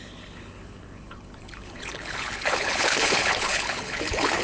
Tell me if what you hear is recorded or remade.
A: remade